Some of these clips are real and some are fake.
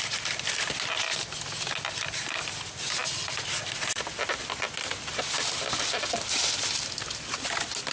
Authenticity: real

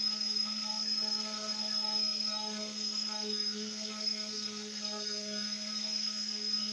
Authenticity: fake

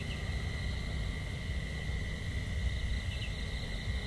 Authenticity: real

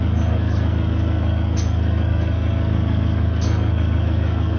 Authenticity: fake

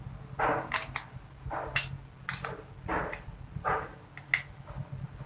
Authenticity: real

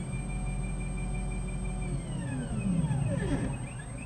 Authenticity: real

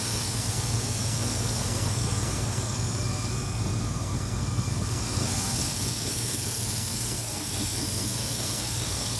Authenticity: fake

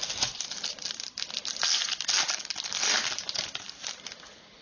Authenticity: real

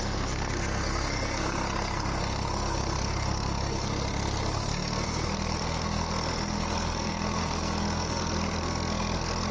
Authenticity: fake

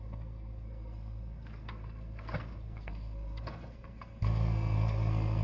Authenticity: fake